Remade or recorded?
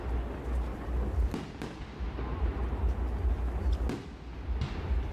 recorded